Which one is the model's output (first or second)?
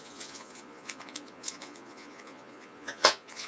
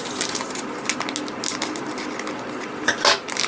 first